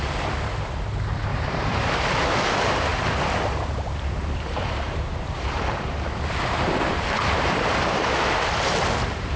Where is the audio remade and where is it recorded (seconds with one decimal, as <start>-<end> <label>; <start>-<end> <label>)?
0.0-1.3 recorded; 1.3-2.0 remade; 2.0-4.2 recorded; 4.2-7.9 remade; 7.9-9.4 recorded